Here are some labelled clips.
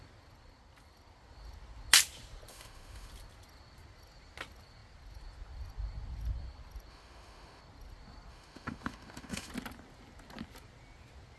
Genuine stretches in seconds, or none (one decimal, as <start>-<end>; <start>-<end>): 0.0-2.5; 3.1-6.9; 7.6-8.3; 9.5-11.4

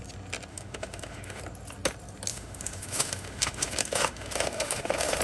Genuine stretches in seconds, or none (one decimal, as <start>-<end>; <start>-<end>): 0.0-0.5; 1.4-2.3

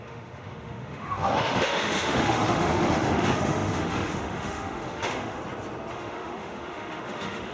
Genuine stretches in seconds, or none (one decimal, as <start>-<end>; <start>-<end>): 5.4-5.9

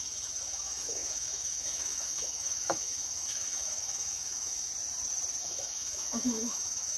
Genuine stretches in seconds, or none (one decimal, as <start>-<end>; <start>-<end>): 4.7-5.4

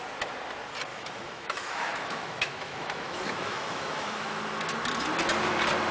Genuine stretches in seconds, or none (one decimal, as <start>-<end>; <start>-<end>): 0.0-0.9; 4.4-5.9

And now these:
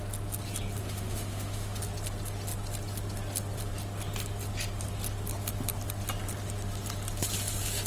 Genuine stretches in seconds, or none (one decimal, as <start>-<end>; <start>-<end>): 0.0-0.8; 1.8-7.9

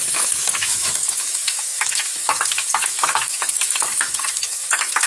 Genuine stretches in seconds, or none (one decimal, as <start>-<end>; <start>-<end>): none